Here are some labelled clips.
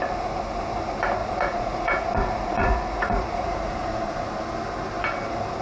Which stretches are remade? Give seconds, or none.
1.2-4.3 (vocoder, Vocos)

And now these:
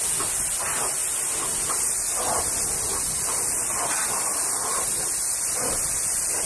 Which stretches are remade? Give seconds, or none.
0.0-1.0 (vocoder, BigVGAN v2); 2.3-6.5

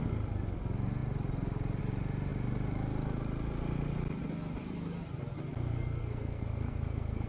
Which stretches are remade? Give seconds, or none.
5.7-7.3 (codec, SNAC)

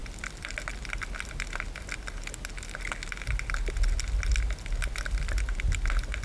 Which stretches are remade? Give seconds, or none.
none